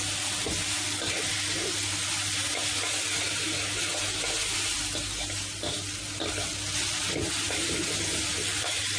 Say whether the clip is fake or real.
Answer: real